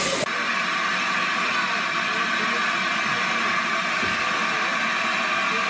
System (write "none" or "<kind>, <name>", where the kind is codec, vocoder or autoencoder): none